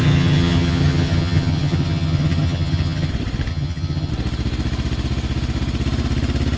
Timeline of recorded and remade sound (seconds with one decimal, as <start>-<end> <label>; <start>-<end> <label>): 0.0-3.1 remade; 3.1-3.5 recorded; 3.5-4.1 remade; 4.1-6.6 recorded